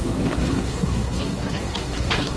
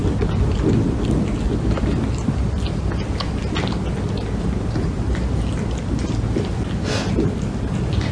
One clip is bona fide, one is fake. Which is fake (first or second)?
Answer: first